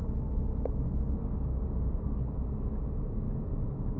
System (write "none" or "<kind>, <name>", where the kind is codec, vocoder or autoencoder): none